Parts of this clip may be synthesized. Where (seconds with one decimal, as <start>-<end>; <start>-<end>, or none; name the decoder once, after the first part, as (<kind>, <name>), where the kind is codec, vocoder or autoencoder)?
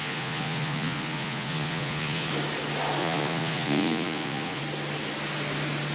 0.0-2.3 (vocoder, Vocos); 3.0-4.6